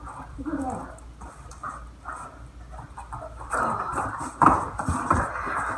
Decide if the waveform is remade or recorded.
recorded